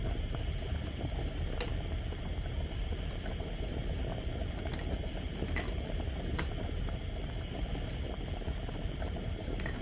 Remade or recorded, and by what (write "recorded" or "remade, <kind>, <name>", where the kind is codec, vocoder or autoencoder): remade, vocoder, BigVGAN v2